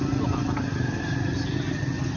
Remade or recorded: recorded